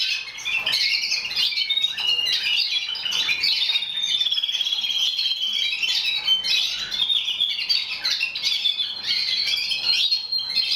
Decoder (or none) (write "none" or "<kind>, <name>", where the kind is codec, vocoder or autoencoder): none